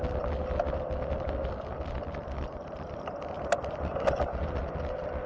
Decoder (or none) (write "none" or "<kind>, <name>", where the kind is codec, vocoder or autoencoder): none